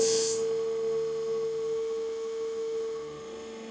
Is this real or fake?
fake